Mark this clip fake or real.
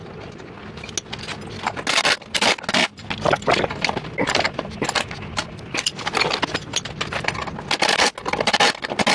real